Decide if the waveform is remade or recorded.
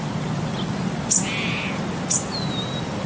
recorded